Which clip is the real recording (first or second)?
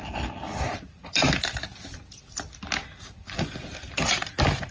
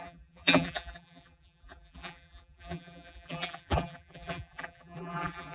first